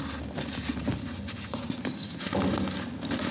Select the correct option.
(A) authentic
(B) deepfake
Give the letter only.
A